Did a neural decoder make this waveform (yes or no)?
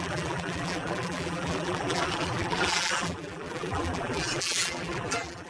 yes